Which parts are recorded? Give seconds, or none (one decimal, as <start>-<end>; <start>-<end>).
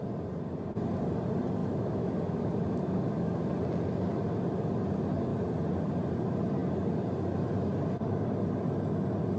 0.0-1.6; 3.5-9.4